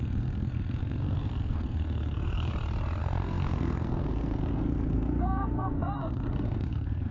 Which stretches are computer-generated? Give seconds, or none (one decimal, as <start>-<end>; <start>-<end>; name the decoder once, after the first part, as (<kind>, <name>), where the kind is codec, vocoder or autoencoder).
0.0-2.5 (codec, SNAC); 3.0-7.1

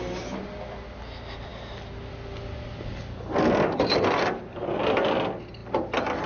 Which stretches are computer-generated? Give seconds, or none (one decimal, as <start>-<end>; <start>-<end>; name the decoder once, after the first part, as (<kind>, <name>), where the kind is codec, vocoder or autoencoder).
none

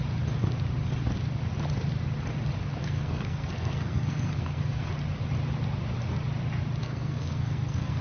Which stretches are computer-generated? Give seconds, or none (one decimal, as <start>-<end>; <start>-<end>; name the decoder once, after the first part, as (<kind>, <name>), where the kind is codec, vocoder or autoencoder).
2.8-4.9 (codec, SNAC); 6.8-8.0

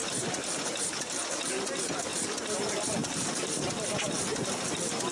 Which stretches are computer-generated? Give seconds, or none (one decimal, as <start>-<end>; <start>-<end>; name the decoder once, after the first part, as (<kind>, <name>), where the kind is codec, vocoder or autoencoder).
none

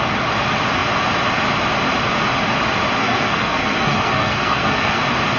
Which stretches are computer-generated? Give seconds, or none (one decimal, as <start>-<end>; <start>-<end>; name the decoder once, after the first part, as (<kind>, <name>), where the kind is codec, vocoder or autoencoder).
3.0-5.0 (codec, SNAC)

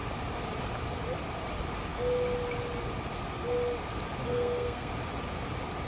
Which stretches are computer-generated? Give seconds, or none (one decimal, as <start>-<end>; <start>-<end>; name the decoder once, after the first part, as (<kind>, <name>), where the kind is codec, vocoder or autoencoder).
4.3-4.9 (codec, SNAC)

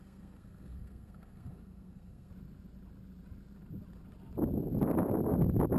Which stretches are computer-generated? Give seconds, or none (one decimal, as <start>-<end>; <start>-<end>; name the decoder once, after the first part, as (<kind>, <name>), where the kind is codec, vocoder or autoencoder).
0.0-2.3 (codec, SNAC)

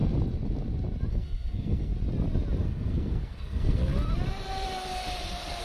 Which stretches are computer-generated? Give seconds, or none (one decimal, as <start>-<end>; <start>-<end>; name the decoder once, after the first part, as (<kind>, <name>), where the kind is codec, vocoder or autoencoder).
1.1-1.9 (codec, SNAC); 2.6-3.9